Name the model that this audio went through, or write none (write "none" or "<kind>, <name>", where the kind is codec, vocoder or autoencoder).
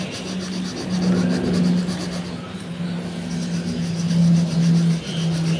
none